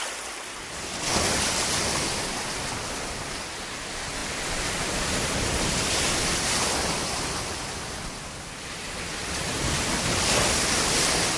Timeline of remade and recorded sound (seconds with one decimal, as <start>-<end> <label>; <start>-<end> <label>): 0.0-11.4 recorded